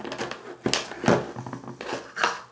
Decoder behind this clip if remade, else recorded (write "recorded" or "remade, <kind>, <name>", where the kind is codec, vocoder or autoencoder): recorded